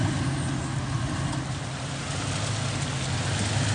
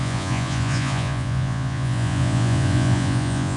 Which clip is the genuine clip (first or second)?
first